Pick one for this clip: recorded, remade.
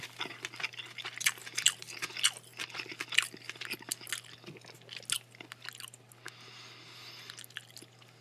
recorded